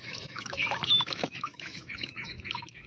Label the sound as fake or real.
fake